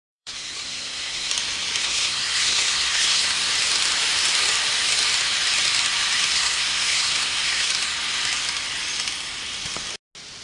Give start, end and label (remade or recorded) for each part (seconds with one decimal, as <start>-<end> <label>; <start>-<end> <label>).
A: 0.0-1.3 remade; 1.3-1.8 recorded; 1.8-3.5 remade; 3.5-6.3 recorded; 6.3-7.7 remade; 7.7-10.4 recorded